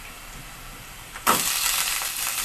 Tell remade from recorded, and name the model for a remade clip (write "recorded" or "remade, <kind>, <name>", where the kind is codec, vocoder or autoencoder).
recorded